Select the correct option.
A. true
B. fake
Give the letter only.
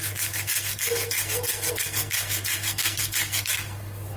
B